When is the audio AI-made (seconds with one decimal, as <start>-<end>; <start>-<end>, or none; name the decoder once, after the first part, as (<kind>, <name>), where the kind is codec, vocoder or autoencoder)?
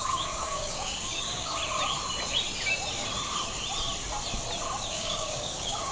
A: 0.0-1.6 (codec, DAC); 4.9-5.9